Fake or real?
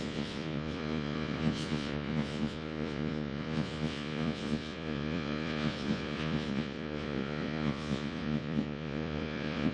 fake